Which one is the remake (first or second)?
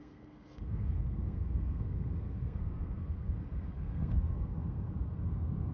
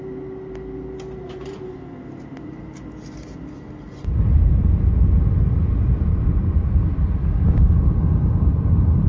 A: first